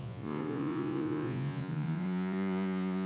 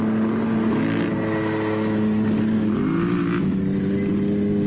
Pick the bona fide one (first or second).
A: second